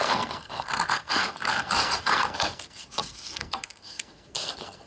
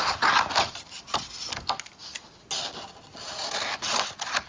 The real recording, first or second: second